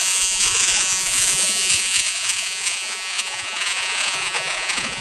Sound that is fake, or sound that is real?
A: fake